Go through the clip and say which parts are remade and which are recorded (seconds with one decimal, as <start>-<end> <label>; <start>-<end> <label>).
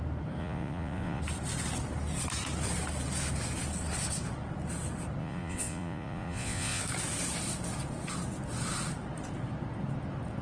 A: 0.0-0.4 recorded; 0.4-1.2 remade; 1.2-5.2 recorded; 5.2-6.8 remade; 6.8-10.4 recorded